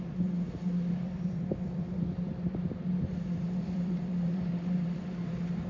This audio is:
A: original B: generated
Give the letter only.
B